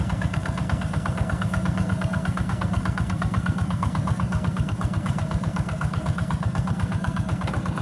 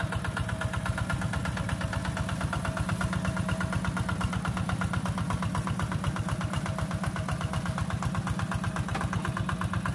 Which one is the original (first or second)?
second